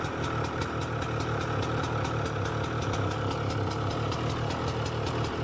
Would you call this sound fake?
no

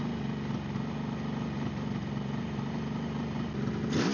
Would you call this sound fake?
no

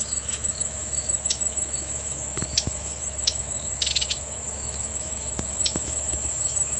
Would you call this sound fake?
yes